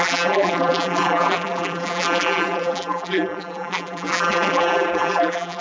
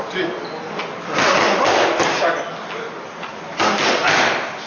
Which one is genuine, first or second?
second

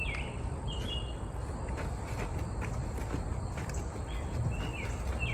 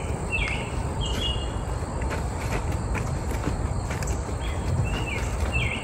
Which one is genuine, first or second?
first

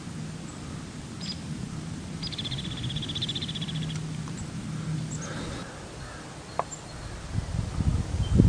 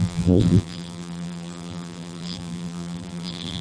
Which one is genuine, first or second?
first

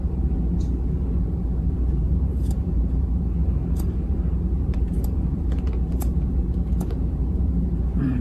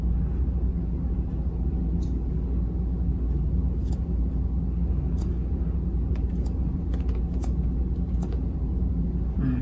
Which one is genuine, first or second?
second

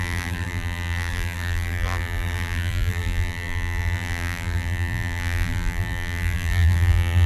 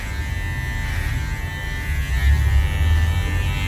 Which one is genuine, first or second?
second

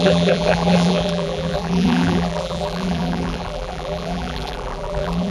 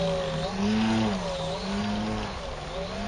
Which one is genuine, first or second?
second